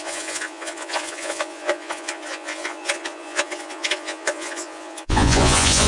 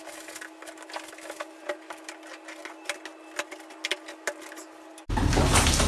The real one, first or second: second